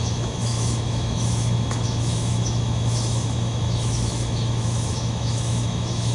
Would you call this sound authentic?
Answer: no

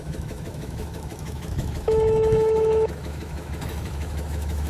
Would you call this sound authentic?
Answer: no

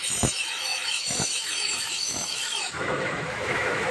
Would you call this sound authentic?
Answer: no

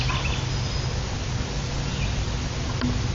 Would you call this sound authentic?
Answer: yes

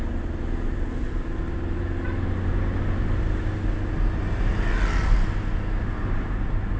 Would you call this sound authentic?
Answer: yes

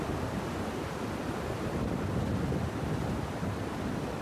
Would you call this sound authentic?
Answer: yes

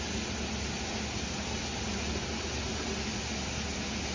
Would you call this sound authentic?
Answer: yes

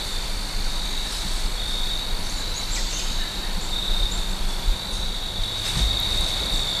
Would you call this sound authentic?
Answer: yes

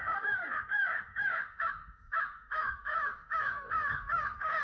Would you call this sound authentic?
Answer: no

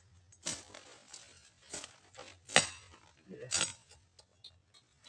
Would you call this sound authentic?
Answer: yes